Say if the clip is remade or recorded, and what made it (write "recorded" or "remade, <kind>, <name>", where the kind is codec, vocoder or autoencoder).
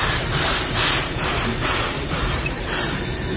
remade, vocoder, BigVGAN v2